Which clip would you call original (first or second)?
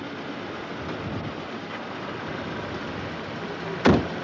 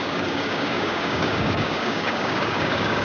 first